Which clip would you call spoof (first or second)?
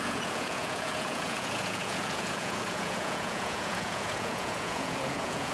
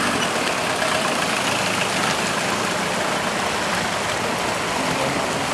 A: first